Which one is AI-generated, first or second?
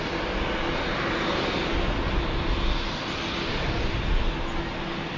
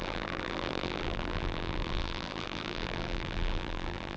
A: second